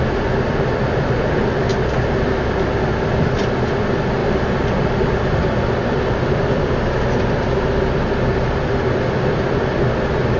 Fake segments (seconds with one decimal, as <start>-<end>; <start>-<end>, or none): 4.2-6.5